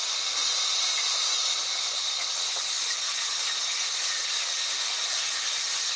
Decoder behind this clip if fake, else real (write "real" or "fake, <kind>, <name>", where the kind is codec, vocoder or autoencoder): real